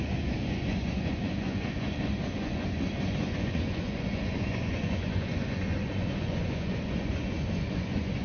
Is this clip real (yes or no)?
no